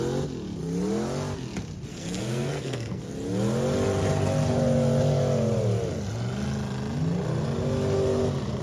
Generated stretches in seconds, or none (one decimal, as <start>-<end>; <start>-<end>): 1.9-3.1